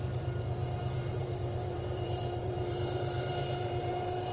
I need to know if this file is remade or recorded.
remade